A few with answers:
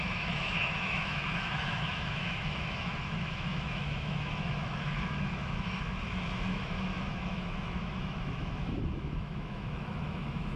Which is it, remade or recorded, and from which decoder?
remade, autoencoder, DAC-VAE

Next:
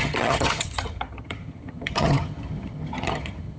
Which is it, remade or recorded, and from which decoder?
remade, vocoder, HiFi-GAN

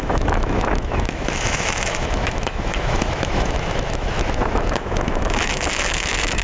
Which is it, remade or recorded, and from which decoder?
remade, autoencoder, DAC-VAE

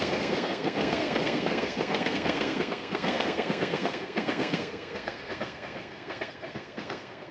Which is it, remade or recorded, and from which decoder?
remade, codec, SNAC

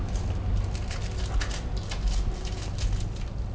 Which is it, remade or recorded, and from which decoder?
recorded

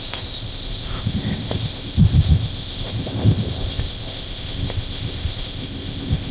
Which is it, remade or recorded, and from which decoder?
remade, codec, ZipCodec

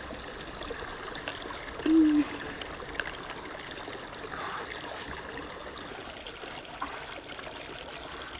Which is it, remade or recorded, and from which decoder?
recorded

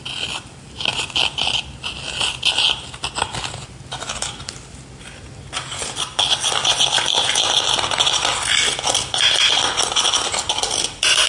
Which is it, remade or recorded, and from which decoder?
recorded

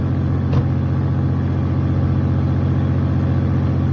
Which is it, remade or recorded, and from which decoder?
recorded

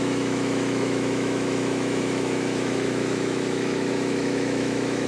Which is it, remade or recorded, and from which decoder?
remade, autoencoder, DAC-VAE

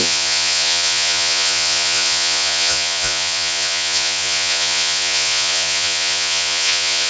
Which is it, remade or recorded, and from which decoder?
remade, vocoder, Vocos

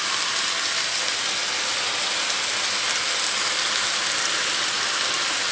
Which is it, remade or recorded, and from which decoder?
recorded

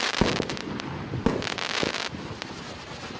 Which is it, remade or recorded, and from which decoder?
recorded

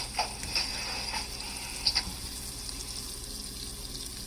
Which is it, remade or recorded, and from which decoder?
recorded